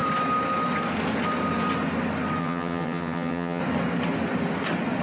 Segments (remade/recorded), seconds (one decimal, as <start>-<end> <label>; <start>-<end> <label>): 0.0-2.4 recorded; 2.4-3.6 remade; 3.6-5.0 recorded